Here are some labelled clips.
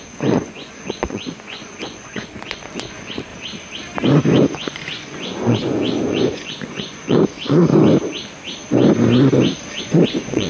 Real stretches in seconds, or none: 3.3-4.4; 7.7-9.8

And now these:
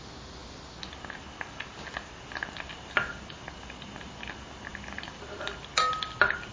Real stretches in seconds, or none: 0.0-6.5

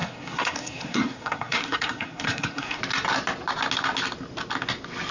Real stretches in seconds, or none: 2.8-5.1

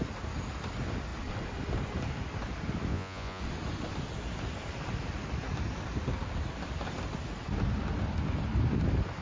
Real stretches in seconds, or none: 0.0-2.9; 3.4-9.2

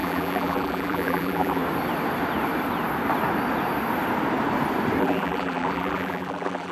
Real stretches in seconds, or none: 1.6-5.0